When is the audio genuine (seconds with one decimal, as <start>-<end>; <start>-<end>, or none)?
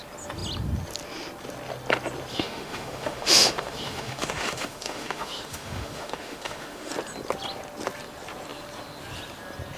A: 0.0-2.3; 6.9-9.8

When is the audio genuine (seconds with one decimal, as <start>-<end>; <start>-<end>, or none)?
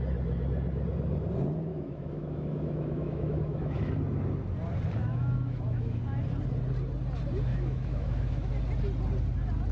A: 0.0-1.7; 3.9-5.0; 6.0-7.5; 8.5-9.7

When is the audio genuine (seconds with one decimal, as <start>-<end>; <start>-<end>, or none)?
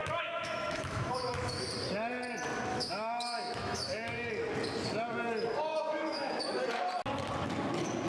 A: 1.7-2.7; 4.3-5.7; 6.3-8.1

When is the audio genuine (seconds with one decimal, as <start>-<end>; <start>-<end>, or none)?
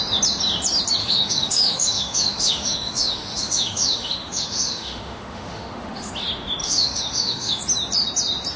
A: 0.0-1.0; 6.1-6.6; 7.6-8.6